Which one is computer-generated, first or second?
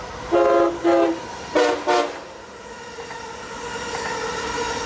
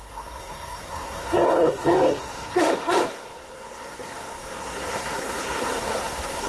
second